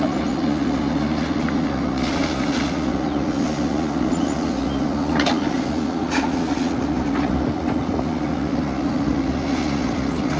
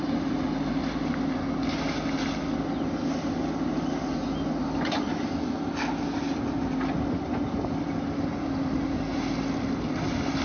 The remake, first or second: first